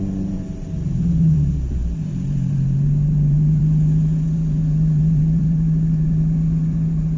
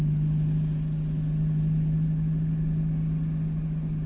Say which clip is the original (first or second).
second